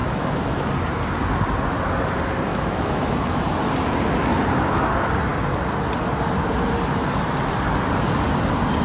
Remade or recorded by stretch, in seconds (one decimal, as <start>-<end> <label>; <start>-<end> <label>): 0.0-0.7 remade; 0.7-2.5 recorded; 2.5-3.4 remade; 3.4-8.8 recorded